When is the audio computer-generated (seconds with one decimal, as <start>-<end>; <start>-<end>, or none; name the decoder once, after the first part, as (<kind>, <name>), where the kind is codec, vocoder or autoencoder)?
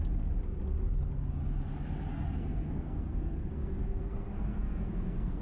2.1-5.4 (codec, SNAC)